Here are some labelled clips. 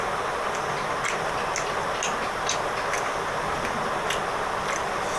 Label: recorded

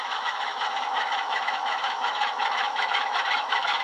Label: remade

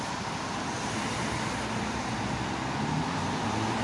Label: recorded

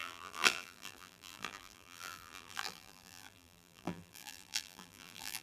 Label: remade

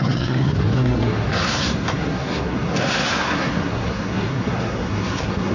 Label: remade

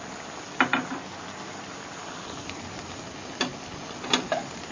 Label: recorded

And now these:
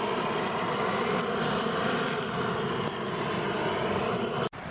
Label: recorded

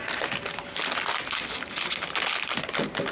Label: recorded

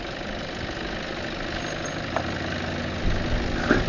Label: recorded